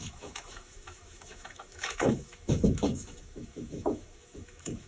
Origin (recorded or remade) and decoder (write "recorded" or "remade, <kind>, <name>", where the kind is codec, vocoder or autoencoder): remade, autoencoder, DAC-VAE